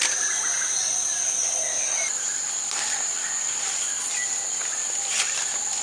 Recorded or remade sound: recorded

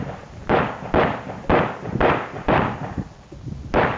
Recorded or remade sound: recorded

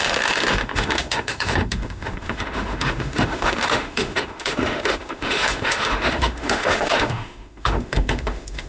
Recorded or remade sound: remade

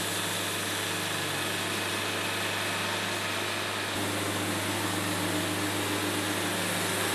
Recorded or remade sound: recorded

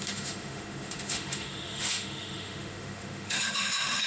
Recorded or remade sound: remade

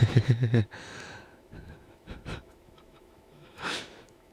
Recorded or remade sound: remade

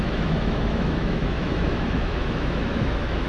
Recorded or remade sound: remade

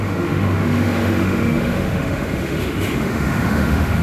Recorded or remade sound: remade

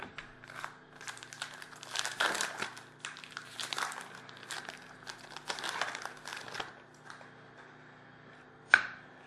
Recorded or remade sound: recorded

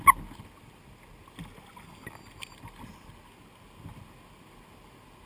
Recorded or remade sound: recorded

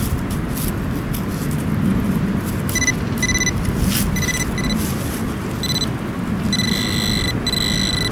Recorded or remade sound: recorded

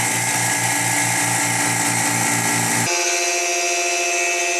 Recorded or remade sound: recorded